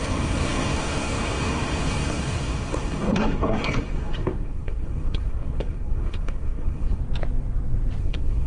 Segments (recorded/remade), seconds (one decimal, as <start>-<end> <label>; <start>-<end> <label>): 0.0-7.0 remade; 7.0-8.0 recorded; 8.0-8.5 remade